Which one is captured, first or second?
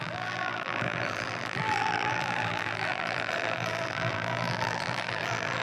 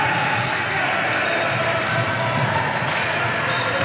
second